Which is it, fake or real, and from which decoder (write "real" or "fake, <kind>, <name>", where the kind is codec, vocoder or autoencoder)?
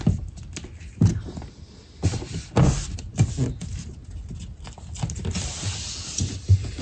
real